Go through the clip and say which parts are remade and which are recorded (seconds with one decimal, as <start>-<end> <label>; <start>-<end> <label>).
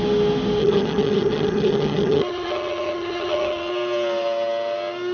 0.0-0.6 recorded; 0.6-3.7 remade; 3.7-5.1 recorded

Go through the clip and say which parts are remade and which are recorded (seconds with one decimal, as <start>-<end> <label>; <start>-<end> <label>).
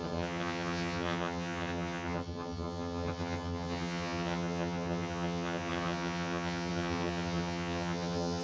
0.0-8.4 remade